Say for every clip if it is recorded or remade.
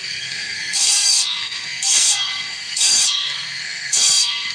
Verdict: remade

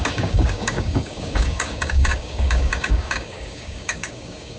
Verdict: remade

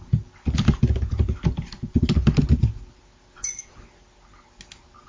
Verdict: recorded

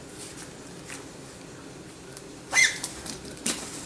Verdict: recorded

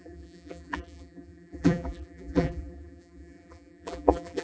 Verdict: remade